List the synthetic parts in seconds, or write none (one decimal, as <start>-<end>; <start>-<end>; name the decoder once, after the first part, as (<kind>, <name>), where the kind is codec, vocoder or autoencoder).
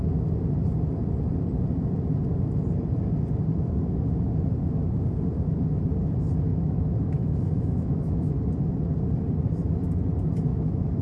6.5-8.3 (autoencoder, DAC-VAE); 10.5-11.0